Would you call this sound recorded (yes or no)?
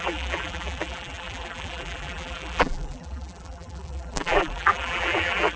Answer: no